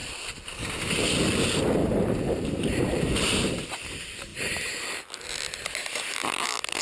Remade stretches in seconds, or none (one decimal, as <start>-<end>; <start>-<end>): 1.8-3.4